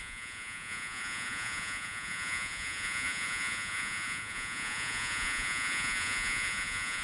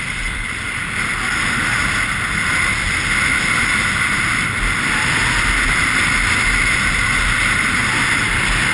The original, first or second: second